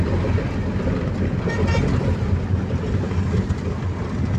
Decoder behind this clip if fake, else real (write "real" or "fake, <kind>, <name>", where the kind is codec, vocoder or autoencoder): real